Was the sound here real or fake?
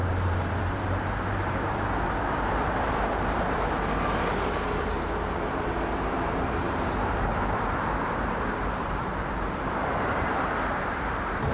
fake